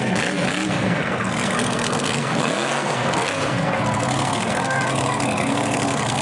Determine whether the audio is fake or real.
fake